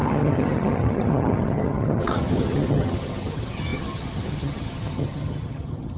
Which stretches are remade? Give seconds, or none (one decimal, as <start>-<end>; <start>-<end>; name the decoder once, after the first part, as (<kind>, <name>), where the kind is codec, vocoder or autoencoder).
0.0-6.0 (vocoder, HiFi-GAN)